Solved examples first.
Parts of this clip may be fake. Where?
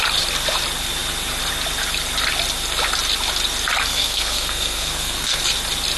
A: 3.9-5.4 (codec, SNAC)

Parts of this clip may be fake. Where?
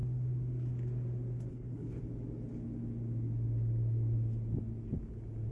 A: 1.5-2.0 (codec, HILCodec)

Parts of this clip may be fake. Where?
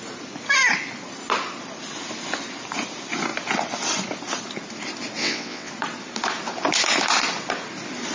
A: 5.2-5.7 (vocoder, WaveNeXt)